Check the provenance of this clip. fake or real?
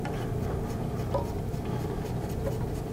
real